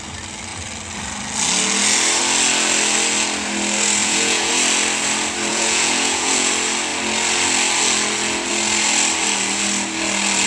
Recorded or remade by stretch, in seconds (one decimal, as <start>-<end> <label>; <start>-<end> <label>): 0.0-4.0 recorded; 4.0-4.5 remade; 4.5-5.5 recorded; 5.5-6.5 remade; 6.5-10.5 recorded